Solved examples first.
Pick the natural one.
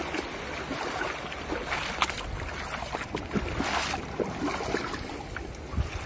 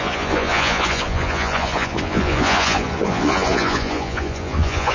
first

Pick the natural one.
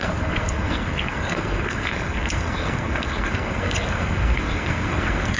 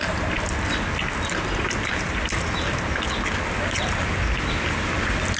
second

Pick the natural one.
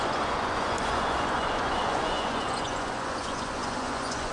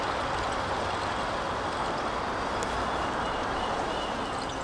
second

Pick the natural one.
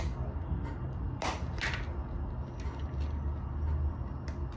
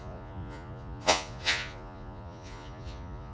first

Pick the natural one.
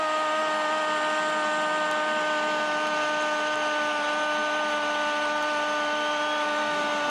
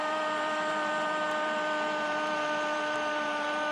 first